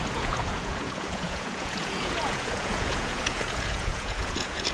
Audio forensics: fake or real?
fake